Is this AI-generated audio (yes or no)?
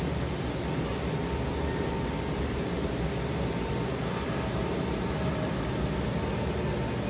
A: no